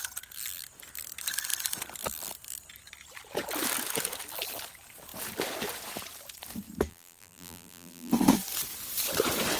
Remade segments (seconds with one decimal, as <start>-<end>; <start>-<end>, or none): 6.9-8.1